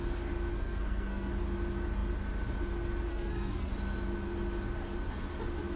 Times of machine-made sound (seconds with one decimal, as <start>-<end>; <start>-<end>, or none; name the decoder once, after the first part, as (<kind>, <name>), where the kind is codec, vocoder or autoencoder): 0.5-1.3 (codec, SNAC); 3.1-3.7